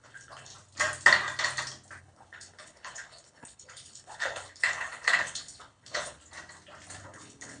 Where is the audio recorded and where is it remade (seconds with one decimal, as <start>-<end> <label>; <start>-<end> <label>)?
0.0-0.5 remade; 0.5-2.0 recorded; 2.0-6.2 remade; 6.2-7.0 recorded; 7.0-7.6 remade